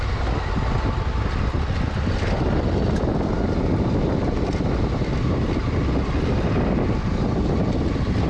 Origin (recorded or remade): recorded